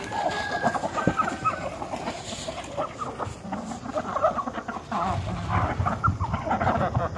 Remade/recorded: recorded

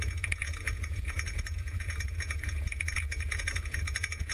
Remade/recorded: remade